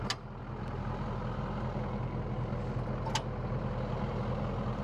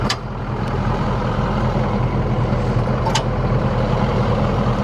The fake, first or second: second